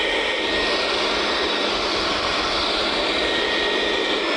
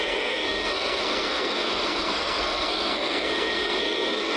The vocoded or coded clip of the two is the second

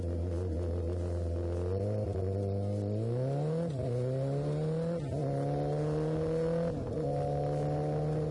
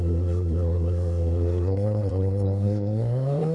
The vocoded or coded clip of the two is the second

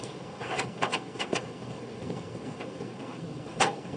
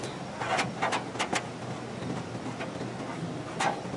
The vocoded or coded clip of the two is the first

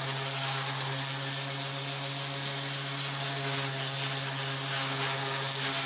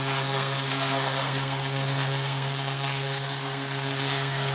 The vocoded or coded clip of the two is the second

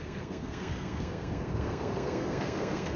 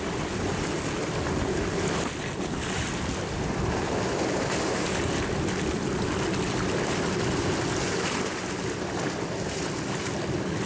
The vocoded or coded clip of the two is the first